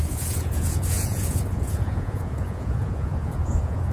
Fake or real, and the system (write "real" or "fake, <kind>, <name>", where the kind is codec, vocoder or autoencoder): fake, vocoder, Vocos